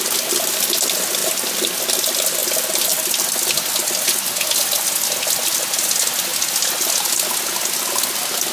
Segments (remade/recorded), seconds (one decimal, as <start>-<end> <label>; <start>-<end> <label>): 0.0-1.2 recorded; 1.2-1.8 remade; 1.8-8.5 recorded